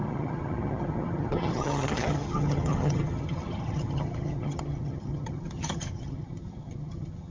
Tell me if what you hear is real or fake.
fake